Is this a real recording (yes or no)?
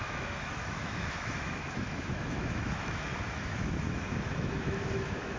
no